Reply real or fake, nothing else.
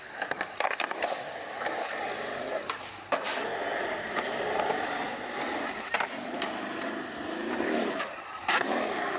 real